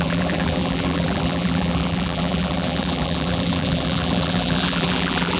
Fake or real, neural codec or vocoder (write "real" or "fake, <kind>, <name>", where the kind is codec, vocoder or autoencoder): fake, vocoder, BigVGAN v2